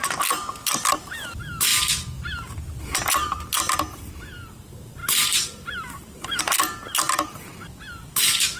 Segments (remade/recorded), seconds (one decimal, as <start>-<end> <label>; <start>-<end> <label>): 0.0-5.0 recorded; 5.0-6.4 remade; 6.4-8.6 recorded